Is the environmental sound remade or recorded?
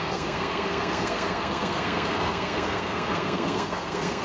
remade